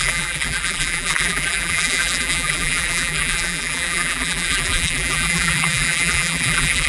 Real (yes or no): no